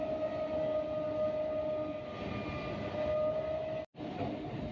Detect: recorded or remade recorded